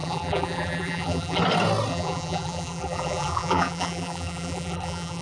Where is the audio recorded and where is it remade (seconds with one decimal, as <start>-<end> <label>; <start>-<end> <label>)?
0.0-1.4 remade; 1.4-1.9 recorded; 1.9-5.2 remade